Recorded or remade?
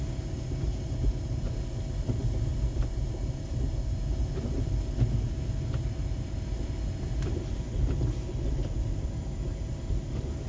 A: recorded